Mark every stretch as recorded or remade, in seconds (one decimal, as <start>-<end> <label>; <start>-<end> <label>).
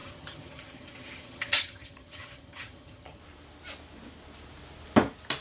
0.0-3.2 remade; 3.2-5.4 recorded